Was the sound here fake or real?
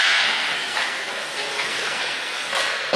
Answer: fake